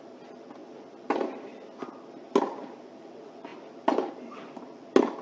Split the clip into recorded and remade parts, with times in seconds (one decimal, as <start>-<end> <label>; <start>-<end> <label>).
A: 0.0-5.2 recorded